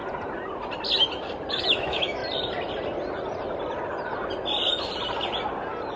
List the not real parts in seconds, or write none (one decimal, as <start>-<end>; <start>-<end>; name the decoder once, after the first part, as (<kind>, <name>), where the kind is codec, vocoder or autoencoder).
1.5-2.2 (autoencoder, DAC-VAE)